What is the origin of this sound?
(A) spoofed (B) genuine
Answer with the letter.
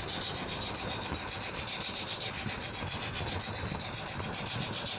B